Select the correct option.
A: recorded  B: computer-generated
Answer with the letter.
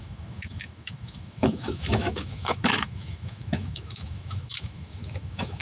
B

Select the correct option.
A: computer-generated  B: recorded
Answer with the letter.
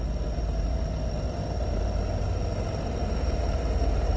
B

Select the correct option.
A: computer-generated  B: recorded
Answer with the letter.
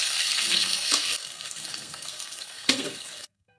A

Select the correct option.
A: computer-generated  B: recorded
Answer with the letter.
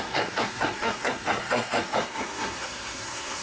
A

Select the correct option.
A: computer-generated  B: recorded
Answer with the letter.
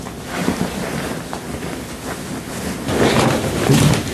B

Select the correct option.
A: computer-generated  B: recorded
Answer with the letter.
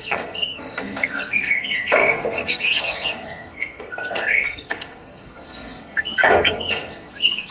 A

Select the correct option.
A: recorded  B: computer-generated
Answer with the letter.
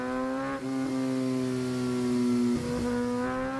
A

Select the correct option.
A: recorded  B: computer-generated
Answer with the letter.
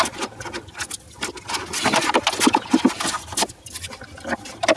A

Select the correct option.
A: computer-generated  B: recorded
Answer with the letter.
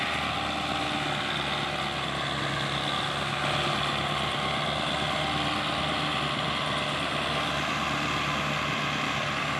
B